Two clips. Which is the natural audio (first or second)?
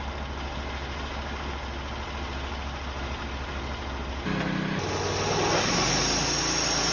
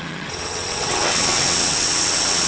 first